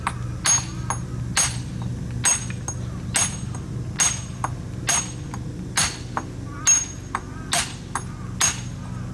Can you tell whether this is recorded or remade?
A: recorded